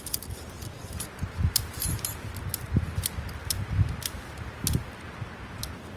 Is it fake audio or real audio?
real